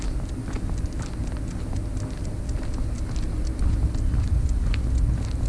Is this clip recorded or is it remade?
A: recorded